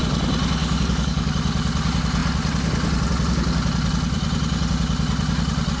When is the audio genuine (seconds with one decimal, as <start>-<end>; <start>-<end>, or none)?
0.0-0.6; 1.3-5.8